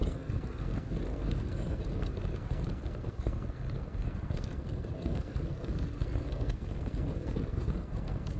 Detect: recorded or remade remade